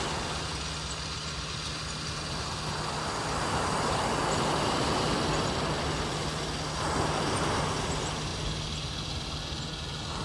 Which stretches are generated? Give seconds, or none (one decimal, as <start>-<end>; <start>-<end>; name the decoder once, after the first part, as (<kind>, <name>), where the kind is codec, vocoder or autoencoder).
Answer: none